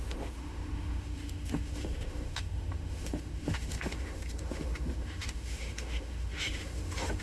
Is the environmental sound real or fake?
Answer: fake